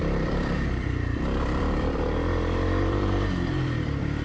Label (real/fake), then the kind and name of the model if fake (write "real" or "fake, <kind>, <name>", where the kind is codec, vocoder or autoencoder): fake, vocoder, BigVGAN v2